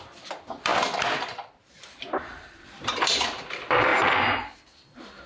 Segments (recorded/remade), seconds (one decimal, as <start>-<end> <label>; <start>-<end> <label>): 0.0-3.9 remade; 3.9-4.8 recorded; 4.8-5.3 remade